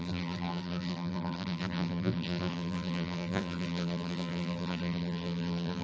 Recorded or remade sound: remade